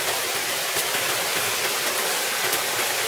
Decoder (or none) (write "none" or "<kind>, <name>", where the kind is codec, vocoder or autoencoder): none